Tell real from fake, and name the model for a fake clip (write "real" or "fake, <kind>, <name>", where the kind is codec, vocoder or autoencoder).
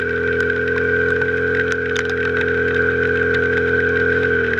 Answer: real